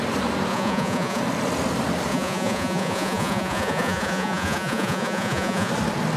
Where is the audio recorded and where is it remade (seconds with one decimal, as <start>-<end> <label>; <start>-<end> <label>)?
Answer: 0.0-0.5 recorded; 0.5-1.2 remade; 1.2-2.1 recorded; 2.1-5.7 remade; 5.7-6.2 recorded